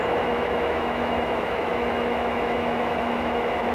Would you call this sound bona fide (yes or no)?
no